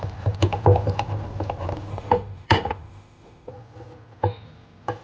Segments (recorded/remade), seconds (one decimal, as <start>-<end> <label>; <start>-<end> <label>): 0.0-1.9 recorded; 1.9-3.5 remade; 3.5-5.0 recorded